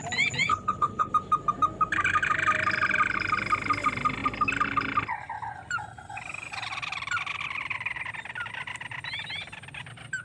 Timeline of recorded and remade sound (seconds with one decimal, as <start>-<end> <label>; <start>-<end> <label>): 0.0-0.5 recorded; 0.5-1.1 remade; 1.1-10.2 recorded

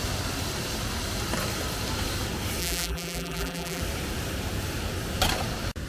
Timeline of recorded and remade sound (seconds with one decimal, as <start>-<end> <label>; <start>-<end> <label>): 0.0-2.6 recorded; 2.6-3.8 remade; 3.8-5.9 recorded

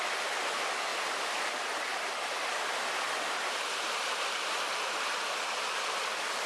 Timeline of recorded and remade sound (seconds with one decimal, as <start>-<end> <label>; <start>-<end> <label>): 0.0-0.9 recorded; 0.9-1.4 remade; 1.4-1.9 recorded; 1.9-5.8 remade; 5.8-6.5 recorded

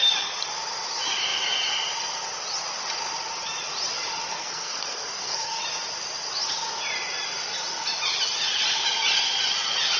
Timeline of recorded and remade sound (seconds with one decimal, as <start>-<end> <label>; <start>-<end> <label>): 0.0-4.3 recorded; 4.3-5.6 remade; 5.6-10.0 recorded

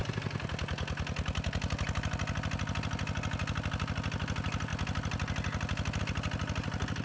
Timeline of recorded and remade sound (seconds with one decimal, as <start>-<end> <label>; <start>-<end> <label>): 0.0-7.0 recorded

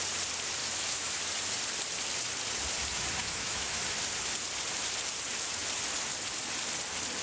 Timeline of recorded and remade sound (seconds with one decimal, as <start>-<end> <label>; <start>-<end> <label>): 0.0-0.6 recorded; 0.6-1.2 remade; 1.2-3.2 recorded; 3.2-3.8 remade; 3.8-7.2 recorded